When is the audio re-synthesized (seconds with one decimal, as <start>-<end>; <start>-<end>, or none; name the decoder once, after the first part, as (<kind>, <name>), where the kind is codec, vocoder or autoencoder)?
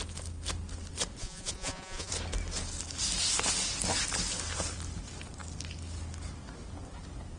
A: 1.2-2.1 (vocoder, Vocos)